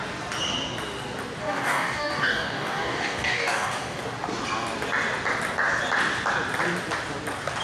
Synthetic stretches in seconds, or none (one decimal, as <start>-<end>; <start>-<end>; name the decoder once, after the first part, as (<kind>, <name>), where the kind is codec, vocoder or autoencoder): 1.4-4.0 (codec, DAC)